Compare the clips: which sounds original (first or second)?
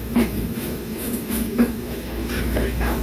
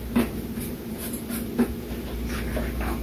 second